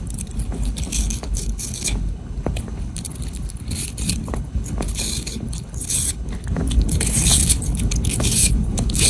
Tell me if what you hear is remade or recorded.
remade